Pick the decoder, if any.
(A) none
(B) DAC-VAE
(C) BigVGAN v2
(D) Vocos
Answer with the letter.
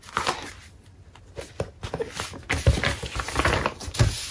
A